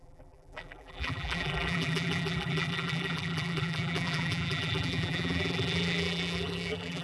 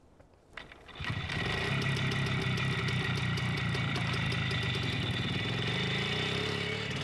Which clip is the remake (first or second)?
first